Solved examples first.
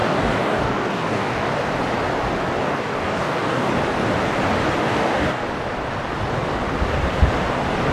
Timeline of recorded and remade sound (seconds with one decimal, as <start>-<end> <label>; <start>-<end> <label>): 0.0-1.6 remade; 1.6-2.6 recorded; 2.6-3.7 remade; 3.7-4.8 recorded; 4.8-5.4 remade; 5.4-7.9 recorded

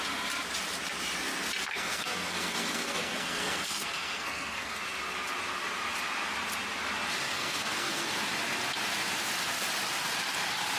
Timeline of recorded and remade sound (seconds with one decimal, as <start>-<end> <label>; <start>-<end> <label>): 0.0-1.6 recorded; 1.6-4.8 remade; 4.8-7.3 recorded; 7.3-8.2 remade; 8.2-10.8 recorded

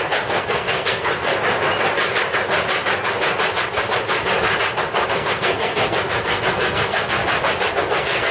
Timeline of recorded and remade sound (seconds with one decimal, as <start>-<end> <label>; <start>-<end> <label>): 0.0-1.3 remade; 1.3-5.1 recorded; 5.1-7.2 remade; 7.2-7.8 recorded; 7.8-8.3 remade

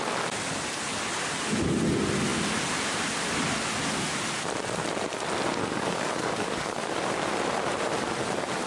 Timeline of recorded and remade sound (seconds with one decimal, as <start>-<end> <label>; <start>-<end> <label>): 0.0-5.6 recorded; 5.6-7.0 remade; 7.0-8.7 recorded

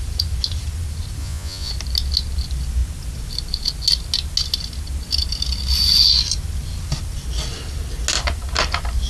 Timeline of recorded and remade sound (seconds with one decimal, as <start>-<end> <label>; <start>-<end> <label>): 0.0-1.2 recorded; 1.2-1.7 remade; 1.7-9.1 recorded